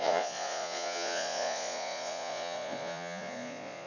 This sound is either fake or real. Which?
fake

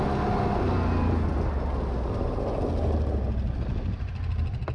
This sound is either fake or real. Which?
real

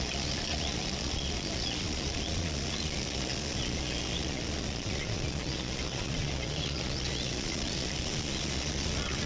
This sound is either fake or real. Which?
fake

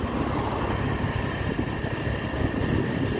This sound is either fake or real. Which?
real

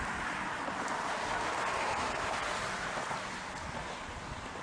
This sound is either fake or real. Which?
real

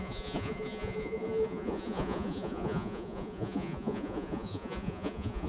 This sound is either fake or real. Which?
fake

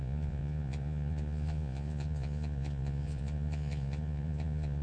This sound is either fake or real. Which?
fake